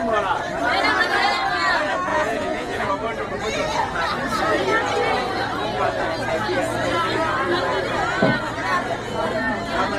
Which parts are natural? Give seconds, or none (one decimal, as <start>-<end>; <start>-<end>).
0.0-2.1; 2.9-10.0